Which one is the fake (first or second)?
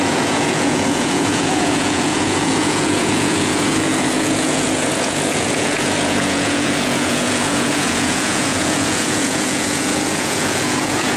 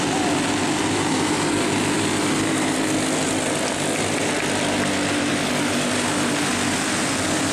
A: first